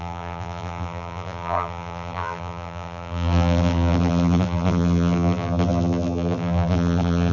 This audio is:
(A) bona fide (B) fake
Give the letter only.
B